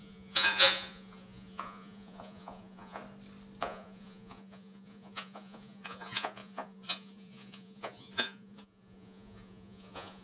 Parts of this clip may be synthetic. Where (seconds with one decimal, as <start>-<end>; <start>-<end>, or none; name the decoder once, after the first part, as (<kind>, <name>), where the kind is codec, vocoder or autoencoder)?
0.0-3.0 (vocoder, Vocos); 3.6-10.2